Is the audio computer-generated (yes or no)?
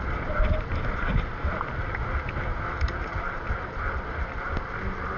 no